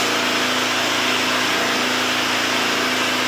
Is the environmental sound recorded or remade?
recorded